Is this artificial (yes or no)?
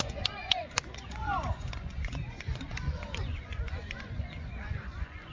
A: yes